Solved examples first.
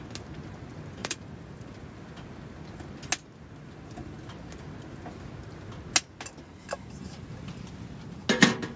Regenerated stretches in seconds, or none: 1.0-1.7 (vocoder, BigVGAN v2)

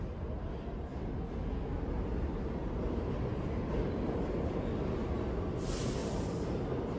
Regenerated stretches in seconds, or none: 6.0-6.6 (vocoder, BigVGAN v2)